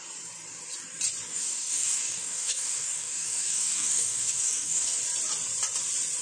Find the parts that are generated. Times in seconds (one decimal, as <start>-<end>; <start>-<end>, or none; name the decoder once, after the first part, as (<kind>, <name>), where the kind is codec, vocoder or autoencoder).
1.3-5.0 (codec, DAC)